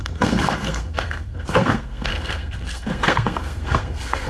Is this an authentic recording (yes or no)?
no